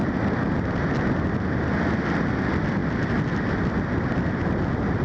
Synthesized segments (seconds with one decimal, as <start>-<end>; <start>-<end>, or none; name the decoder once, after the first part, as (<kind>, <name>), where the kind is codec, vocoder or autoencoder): none